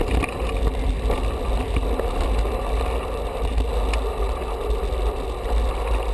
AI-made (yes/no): no